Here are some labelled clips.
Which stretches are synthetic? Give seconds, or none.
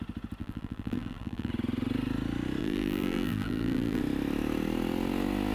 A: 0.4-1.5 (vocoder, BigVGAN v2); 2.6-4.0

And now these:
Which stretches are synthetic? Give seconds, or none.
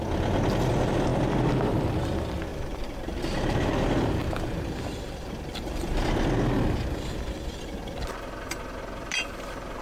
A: 2.5-6.0 (vocoder, BigVGAN v2)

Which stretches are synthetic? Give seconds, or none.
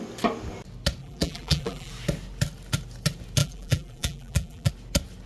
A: 1.0-1.9 (vocoder, BigVGAN v2); 3.4-4.7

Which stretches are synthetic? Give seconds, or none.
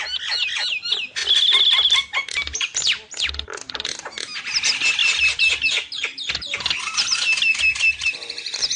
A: 5.0-6.3 (vocoder, BigVGAN v2); 7.5-8.1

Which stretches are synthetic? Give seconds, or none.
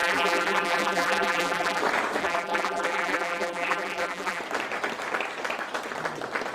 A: 0.0-1.8 (vocoder, BigVGAN v2); 2.2-4.4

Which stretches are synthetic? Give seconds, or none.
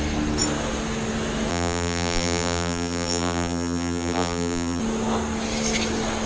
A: 1.5-4.8 (vocoder, BigVGAN v2)